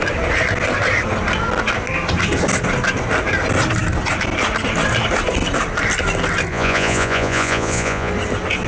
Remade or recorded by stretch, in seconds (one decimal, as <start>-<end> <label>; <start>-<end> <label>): 0.0-6.5 recorded; 6.5-8.1 remade; 8.1-8.7 recorded